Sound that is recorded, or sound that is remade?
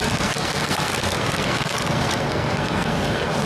remade